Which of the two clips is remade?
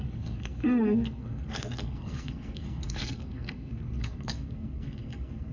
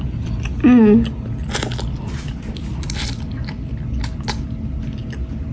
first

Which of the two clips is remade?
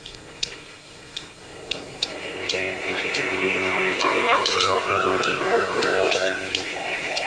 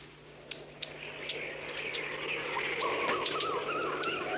first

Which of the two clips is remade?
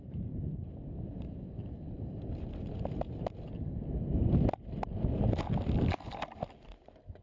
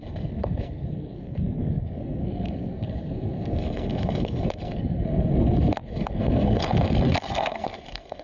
second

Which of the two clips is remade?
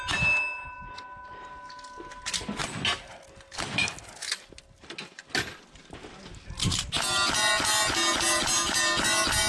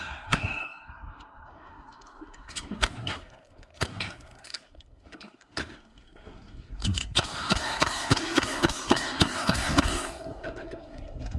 second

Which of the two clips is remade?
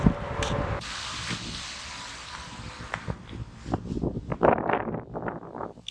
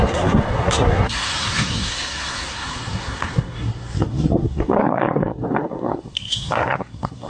second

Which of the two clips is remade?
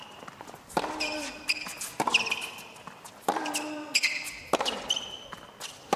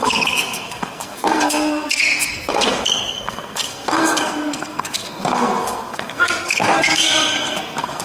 second